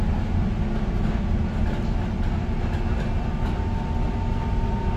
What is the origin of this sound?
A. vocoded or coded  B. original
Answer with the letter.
B